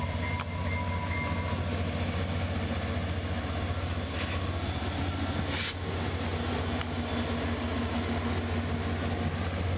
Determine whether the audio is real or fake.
real